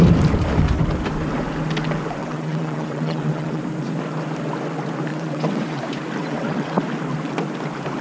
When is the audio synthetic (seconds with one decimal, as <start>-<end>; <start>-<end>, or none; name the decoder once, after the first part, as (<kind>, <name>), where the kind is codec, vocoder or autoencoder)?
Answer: 2.2-3.6 (vocoder, WaveNeXt); 5.1-5.8; 6.2-6.8